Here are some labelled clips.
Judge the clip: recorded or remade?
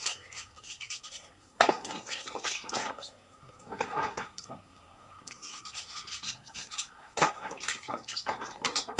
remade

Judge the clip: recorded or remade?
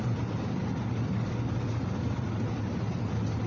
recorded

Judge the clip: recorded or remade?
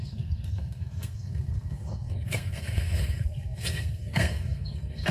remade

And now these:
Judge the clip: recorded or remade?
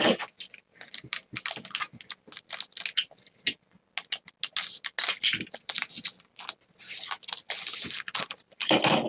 recorded